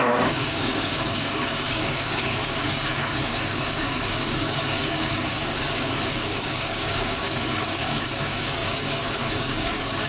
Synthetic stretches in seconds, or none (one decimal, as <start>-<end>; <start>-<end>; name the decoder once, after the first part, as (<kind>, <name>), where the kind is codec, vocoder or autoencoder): 0.0-10.1 (codec, DAC)

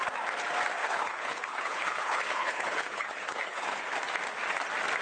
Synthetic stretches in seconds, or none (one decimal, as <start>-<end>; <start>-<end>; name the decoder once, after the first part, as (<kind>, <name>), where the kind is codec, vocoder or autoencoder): 0.8-3.8 (codec, HILCodec)